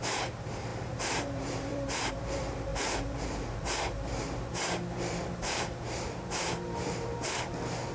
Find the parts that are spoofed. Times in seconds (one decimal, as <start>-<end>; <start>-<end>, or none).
0.0-7.9